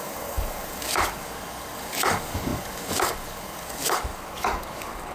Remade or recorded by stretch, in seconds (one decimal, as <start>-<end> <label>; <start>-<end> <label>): 0.0-5.1 remade